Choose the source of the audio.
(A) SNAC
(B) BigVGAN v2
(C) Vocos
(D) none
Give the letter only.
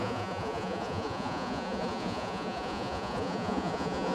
C